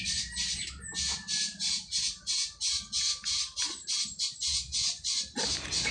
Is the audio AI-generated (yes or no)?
yes